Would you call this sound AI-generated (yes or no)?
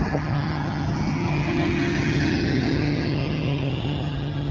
yes